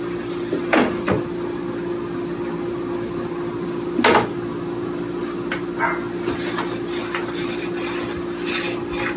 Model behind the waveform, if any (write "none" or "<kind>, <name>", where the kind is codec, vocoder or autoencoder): none